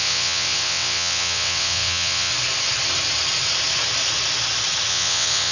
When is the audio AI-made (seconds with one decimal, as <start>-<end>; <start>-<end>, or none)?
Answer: 0.0-2.3; 4.9-5.5